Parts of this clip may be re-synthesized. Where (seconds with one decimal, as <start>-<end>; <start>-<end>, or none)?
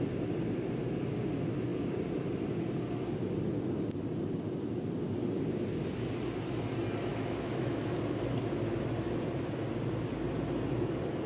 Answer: 7.1-7.8